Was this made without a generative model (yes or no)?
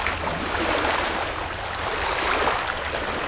yes